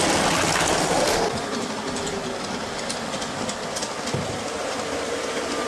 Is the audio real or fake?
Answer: real